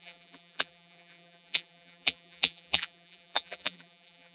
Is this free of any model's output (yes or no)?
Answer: no